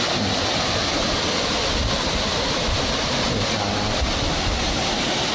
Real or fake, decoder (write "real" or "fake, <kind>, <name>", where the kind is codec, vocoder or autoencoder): real